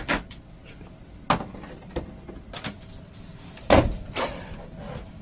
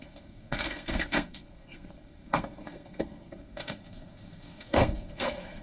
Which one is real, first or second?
first